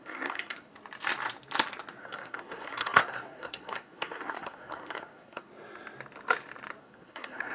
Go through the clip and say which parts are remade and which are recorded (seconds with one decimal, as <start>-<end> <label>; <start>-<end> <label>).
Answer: 0.0-0.7 remade; 0.7-2.0 recorded; 2.0-5.5 remade; 5.5-6.8 recorded; 6.8-7.5 remade